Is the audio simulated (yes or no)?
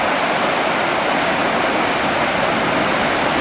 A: no